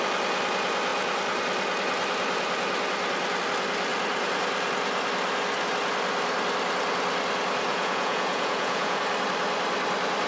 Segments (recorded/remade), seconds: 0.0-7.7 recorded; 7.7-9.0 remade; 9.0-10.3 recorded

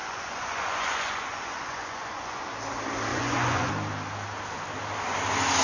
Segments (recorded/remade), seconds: 0.0-2.4 remade; 2.4-3.1 recorded; 3.1-3.7 remade; 3.7-5.6 recorded

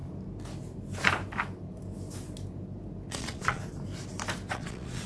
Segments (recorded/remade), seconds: 0.0-3.1 recorded; 3.1-3.6 remade; 3.6-4.5 recorded; 4.5-5.1 remade

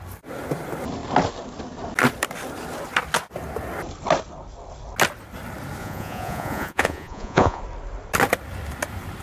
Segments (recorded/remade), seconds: 0.0-5.8 recorded; 5.8-7.6 remade; 7.6-9.2 recorded

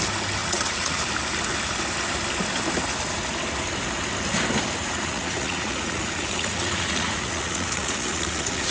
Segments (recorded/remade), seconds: 0.0-0.4 recorded; 0.4-1.0 remade; 1.0-4.8 recorded; 4.8-8.7 remade